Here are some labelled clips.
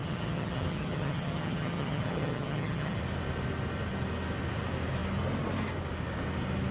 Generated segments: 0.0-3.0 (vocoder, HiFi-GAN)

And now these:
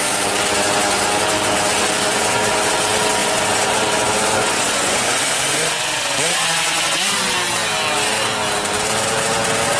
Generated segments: 2.1-2.7 (vocoder, Vocos); 3.2-7.3

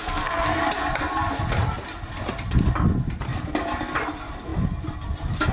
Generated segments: 0.0-0.6 (codec, SNAC)

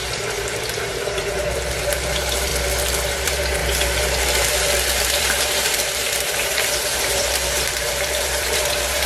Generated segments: 0.0-2.5 (vocoder, BigVGAN v2); 3.1-3.6; 5.0-9.1

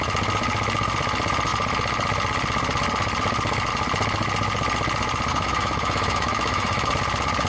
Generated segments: 5.3-6.9 (autoencoder, DAC-VAE)